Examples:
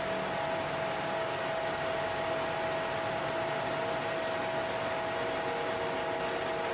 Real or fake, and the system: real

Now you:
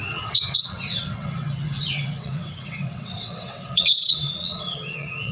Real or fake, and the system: fake, vocoder, WaveNeXt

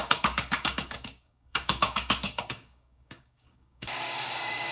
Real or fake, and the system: fake, codec, DAC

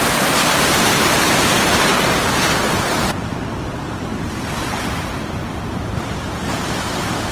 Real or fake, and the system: fake, vocoder, BigVGAN v2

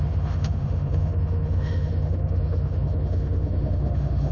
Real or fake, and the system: fake, autoencoder, DAC-VAE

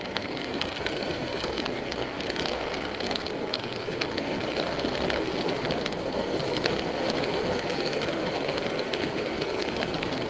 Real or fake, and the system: fake, codec, SNAC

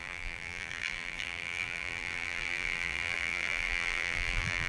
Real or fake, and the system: fake, vocoder, BigVGAN v2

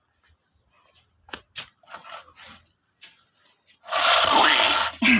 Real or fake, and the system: real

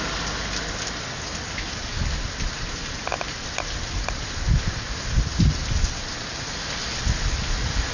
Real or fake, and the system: real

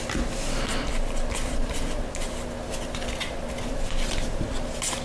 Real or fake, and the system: real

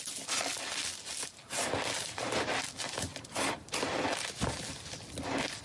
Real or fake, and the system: real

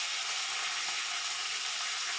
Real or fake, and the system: real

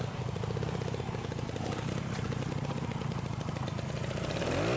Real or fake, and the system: real